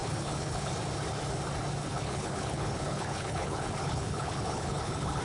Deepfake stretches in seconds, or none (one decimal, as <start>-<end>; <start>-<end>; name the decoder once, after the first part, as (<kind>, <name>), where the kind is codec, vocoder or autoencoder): 0.0-0.7 (codec, HILCodec); 1.8-5.2

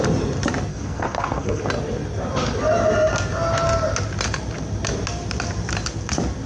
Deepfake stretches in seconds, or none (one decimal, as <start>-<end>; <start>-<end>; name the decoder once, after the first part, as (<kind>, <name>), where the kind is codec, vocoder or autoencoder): 0.7-1.6 (codec, SNAC)

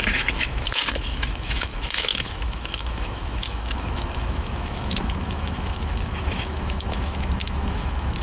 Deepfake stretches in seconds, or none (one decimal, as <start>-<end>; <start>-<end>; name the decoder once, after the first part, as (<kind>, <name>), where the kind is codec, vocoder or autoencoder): 0.0-8.2 (autoencoder, DAC-VAE)

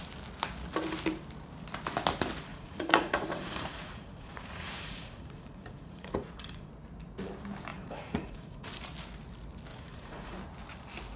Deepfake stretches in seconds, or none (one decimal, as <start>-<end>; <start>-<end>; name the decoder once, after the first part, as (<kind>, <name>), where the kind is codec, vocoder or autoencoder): 2.5-6.7 (vocoder, Vocos); 7.7-8.7; 9.7-10.3

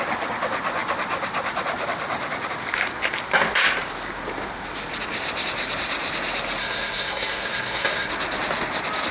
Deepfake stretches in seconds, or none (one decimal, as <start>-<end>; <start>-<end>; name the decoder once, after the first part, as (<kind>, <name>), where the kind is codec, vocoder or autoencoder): 6.6-8.1 (codec, SNAC)